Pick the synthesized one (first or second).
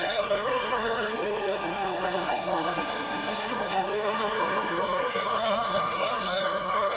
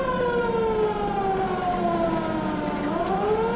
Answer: first